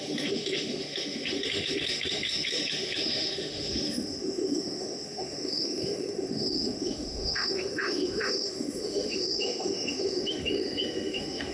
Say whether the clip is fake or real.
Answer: fake